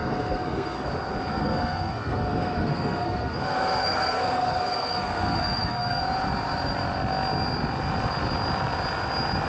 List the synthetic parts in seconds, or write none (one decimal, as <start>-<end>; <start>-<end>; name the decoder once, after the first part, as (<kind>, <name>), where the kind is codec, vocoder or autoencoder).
0.0-0.9 (codec, SNAC); 1.3-6.0